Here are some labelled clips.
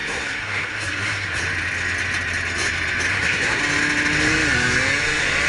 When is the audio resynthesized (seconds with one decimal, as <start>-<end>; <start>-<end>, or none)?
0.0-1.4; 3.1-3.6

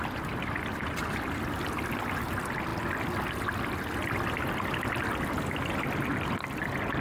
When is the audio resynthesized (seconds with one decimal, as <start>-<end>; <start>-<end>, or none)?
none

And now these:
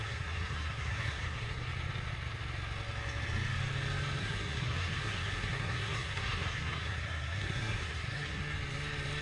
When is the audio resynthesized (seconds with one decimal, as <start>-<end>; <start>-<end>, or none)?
0.0-1.7; 4.2-8.4

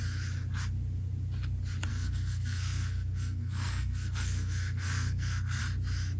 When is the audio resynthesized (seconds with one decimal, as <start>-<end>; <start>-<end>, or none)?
1.9-5.6